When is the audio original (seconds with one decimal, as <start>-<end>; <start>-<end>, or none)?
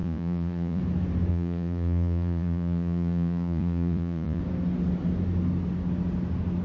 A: 0.8-1.3; 4.4-6.6